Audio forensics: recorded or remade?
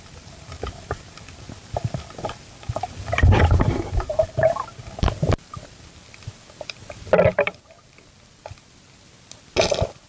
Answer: recorded